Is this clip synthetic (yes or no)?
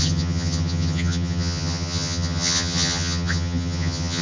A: yes